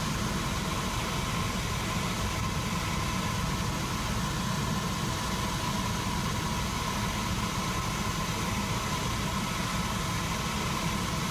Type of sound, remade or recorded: recorded